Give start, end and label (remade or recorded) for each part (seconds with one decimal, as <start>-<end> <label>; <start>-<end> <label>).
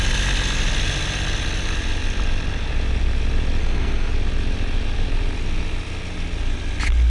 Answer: 0.0-3.6 recorded; 3.6-4.1 remade; 4.1-7.1 recorded